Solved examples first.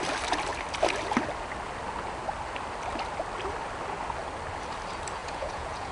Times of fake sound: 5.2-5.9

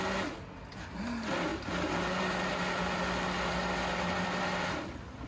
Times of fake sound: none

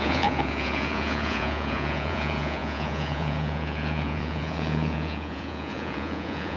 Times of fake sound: 0.0-6.6

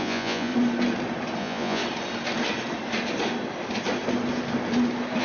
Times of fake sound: 0.0-0.5; 1.4-1.8

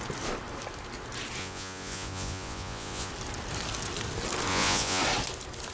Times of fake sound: 1.4-3.1; 4.5-5.0

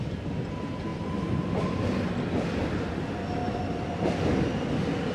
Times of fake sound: none

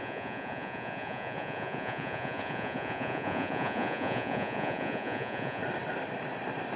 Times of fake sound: 0.0-5.6